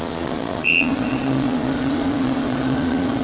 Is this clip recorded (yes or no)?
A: no